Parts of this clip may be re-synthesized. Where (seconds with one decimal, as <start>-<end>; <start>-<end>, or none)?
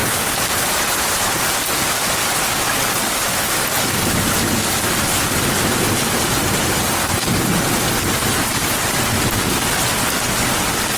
0.0-1.4